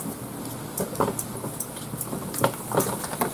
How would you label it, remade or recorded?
recorded